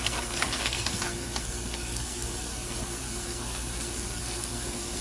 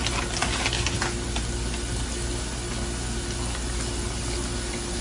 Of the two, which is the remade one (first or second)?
first